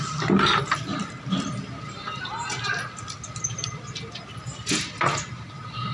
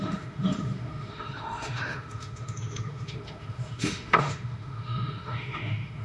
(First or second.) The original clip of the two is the first